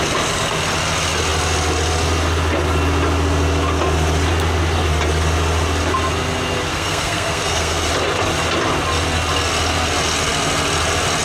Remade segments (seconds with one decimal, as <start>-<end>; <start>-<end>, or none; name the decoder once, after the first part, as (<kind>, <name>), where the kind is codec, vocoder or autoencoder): 6.7-7.9 (codec, SNAC)